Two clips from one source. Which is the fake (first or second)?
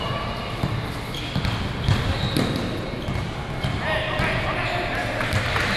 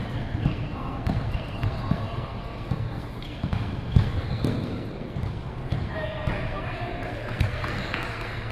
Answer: second